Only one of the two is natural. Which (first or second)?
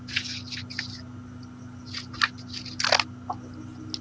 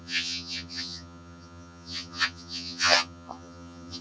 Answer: first